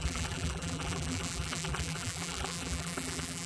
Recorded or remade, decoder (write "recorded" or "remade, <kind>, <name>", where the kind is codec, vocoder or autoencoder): remade, vocoder, BigVGAN v2